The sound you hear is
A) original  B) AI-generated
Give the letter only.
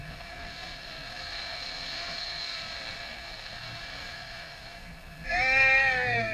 B